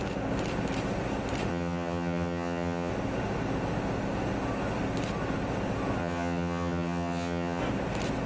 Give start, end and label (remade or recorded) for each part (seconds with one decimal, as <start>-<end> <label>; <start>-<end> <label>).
0.0-1.5 recorded; 1.5-2.9 remade; 2.9-6.0 recorded; 6.0-7.6 remade; 7.6-8.3 recorded